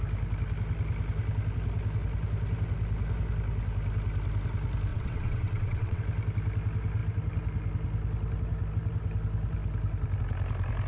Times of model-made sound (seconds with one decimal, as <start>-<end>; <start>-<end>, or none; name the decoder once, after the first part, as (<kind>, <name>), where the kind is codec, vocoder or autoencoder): 4.9-6.0 (vocoder, WaveNeXt)